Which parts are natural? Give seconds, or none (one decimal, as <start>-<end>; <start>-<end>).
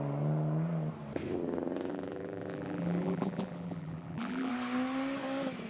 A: 0.0-1.9; 4.5-5.7